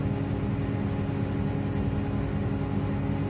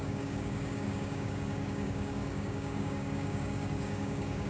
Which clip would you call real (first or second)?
first